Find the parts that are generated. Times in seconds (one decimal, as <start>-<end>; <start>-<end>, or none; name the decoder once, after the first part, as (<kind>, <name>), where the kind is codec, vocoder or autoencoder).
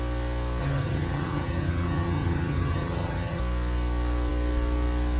0.6-3.4 (vocoder, HiFi-GAN)